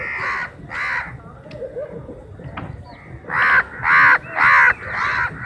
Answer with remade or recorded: recorded